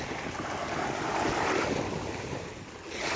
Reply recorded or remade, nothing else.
recorded